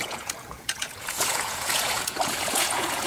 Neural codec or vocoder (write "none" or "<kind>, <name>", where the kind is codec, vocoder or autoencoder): vocoder, Vocos